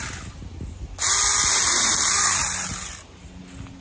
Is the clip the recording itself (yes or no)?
yes